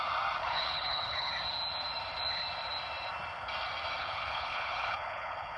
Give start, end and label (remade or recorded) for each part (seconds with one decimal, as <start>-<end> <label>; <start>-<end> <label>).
0.0-0.4 recorded; 0.4-1.3 remade; 1.3-4.0 recorded; 4.0-5.6 remade